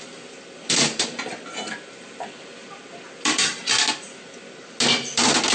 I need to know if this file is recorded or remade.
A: recorded